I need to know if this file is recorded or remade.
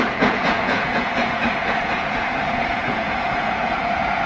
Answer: remade